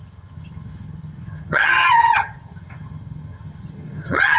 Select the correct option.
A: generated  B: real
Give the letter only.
A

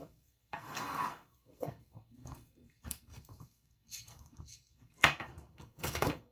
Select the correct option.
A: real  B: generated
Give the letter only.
B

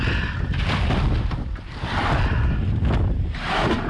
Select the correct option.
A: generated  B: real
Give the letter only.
B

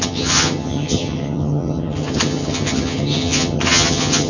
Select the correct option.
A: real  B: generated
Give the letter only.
B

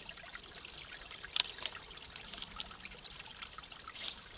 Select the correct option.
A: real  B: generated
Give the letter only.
B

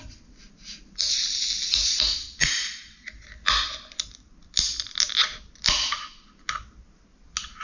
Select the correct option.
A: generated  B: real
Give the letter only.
B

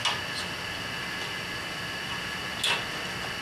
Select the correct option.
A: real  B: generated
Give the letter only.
A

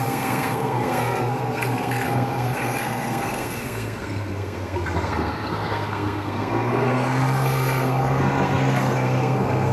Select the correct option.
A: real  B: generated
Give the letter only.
B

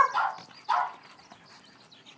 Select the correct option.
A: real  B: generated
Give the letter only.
A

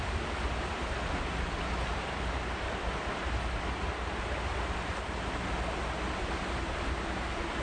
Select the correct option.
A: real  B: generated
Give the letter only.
A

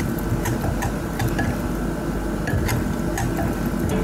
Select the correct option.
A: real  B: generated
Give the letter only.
A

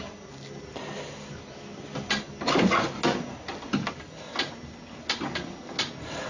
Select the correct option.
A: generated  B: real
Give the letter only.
B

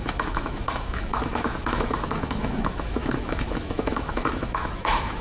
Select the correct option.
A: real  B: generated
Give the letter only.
B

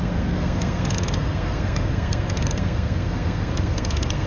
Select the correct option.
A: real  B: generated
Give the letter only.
B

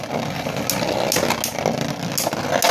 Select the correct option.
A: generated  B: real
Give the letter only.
B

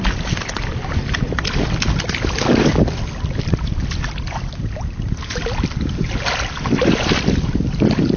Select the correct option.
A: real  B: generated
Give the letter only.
A